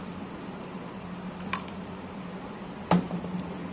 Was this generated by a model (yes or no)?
no